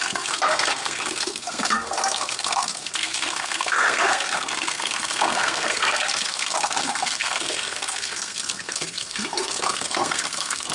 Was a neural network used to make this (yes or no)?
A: yes